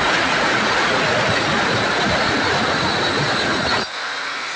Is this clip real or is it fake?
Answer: fake